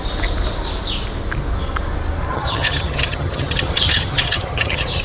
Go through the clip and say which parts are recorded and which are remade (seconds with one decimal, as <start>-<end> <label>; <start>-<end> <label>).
0.0-2.3 recorded; 2.3-5.0 remade